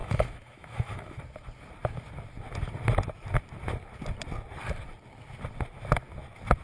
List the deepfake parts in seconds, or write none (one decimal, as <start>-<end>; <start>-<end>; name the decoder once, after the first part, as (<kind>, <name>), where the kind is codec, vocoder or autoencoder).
0.0-1.2 (autoencoder, DAC-VAE)